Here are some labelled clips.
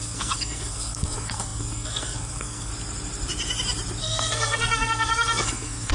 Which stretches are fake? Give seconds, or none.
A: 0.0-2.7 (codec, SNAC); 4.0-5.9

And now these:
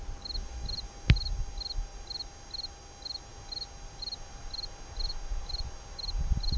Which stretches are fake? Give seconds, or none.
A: none

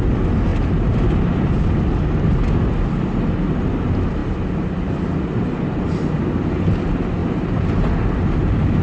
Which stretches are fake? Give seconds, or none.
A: none

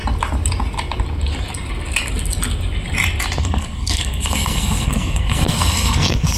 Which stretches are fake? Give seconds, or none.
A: 3.4-6.4 (codec, SNAC)